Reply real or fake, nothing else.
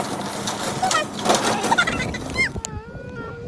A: real